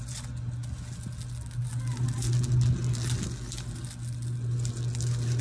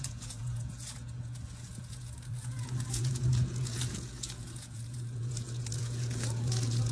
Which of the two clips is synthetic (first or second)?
second